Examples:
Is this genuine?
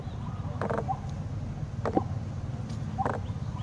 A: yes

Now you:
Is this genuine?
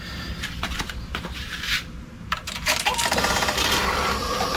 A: no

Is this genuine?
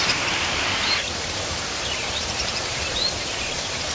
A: no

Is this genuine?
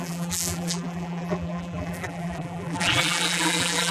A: no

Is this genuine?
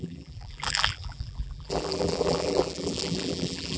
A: no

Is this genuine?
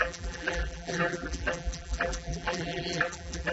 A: no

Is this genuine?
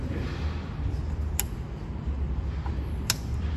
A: yes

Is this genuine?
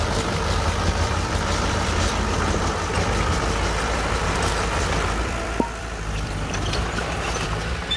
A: no